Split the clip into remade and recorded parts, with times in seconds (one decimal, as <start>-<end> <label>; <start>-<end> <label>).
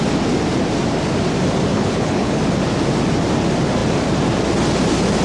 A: 0.0-1.7 recorded; 1.7-2.4 remade; 2.4-5.2 recorded